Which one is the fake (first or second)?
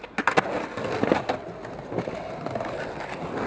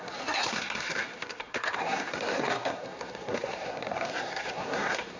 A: second